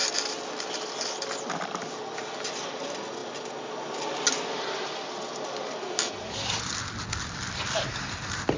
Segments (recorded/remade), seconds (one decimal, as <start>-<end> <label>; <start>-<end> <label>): 0.0-8.6 recorded

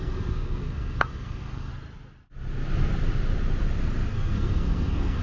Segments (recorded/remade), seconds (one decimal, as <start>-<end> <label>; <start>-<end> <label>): 0.0-1.7 remade; 1.7-4.1 recorded; 4.1-5.2 remade

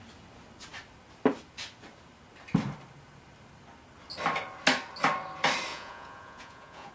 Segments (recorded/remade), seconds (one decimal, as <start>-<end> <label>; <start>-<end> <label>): 0.0-5.7 recorded; 5.7-6.9 remade

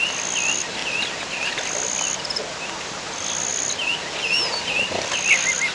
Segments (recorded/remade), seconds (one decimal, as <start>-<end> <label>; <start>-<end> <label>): 0.0-5.7 recorded

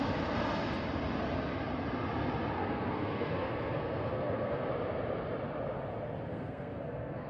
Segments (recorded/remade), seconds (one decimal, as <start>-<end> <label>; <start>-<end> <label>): 0.0-2.6 recorded; 2.6-4.7 remade; 4.7-6.3 recorded; 6.3-7.3 remade